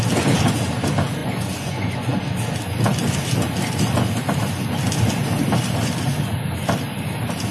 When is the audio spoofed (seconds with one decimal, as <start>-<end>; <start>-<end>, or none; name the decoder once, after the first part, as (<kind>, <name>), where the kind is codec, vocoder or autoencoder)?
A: 1.2-2.2 (vocoder, Vocos)